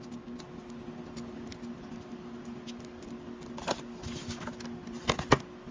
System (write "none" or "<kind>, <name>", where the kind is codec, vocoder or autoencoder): none